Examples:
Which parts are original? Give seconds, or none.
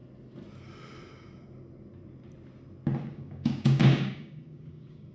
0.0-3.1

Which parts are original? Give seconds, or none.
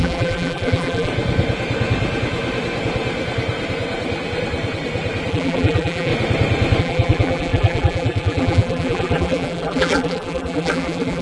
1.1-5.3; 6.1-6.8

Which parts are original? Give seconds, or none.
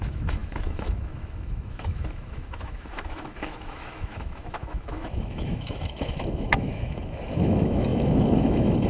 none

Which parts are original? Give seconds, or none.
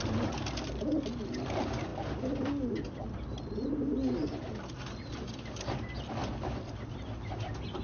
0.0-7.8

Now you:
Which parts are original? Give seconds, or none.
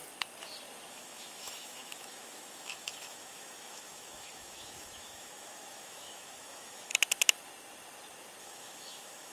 0.0-0.9; 6.9-8.4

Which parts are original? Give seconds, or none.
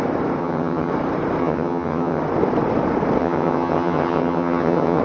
0.0-0.4; 0.9-1.4; 2.2-3.2